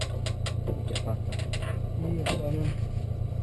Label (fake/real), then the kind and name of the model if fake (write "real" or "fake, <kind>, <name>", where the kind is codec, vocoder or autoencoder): real